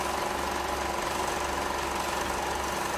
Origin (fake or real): real